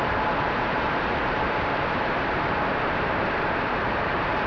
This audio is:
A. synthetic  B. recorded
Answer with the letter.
A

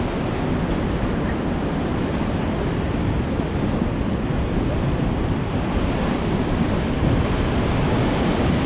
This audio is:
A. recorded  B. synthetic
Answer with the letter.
A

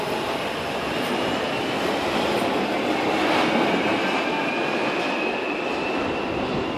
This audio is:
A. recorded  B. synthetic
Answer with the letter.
A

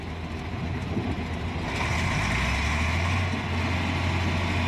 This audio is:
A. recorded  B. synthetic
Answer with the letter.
A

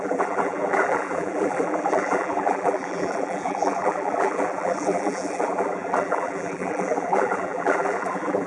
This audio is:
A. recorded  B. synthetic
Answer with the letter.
B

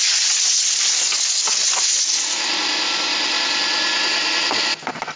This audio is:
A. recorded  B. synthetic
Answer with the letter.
A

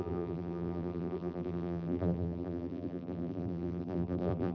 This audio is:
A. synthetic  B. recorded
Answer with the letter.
A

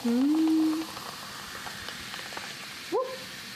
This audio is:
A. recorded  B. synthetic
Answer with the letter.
A